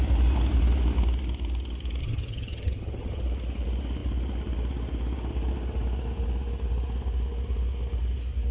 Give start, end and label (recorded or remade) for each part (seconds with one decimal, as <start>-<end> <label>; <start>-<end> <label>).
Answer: 0.0-2.0 recorded; 2.0-3.2 remade; 3.2-8.5 recorded